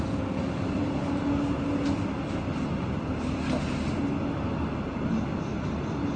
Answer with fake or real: real